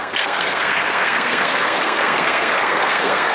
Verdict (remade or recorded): remade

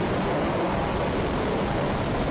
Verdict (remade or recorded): recorded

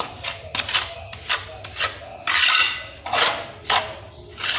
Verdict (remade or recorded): recorded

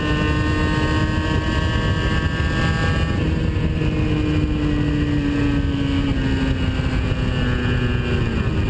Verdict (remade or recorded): recorded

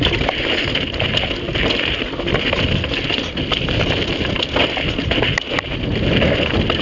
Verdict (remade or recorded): recorded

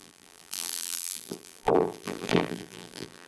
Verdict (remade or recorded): remade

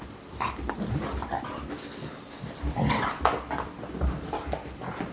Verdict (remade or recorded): recorded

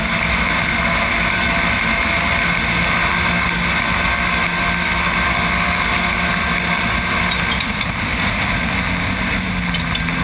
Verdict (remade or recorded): recorded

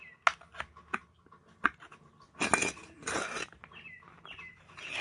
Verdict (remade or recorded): recorded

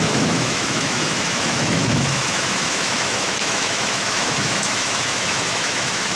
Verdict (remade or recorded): remade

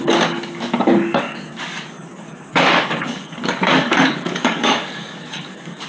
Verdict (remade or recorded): remade